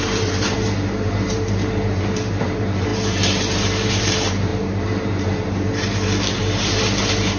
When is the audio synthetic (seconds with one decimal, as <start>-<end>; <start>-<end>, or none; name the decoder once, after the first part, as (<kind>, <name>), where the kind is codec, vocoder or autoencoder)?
0.0-7.4 (vocoder, BigVGAN v2)